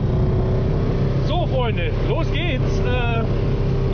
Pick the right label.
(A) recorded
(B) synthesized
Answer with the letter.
A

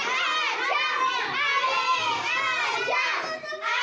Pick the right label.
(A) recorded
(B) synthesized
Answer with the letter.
A